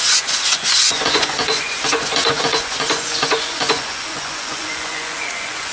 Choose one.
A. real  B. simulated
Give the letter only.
B